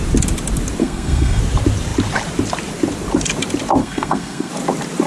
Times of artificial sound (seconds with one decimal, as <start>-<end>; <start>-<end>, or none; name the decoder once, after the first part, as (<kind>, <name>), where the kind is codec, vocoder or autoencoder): 0.8-1.4 (codec, SNAC); 3.8-4.5